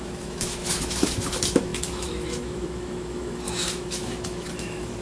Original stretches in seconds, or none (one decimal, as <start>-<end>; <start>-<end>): none